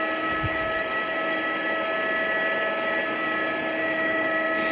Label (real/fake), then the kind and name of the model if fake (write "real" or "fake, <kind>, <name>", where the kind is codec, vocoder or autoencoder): fake, vocoder, BigVGAN v2